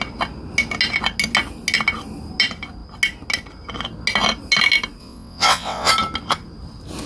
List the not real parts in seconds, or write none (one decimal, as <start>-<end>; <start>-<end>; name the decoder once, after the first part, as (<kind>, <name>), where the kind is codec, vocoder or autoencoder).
5.0-5.9 (vocoder, WaveNeXt)